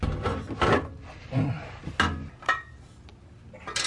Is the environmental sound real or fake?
real